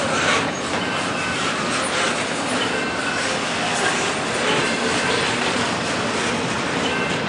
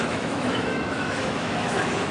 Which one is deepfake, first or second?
second